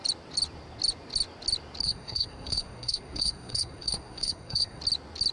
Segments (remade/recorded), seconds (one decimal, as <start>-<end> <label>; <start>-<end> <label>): 0.0-1.8 recorded; 1.8-4.8 remade; 4.8-5.3 recorded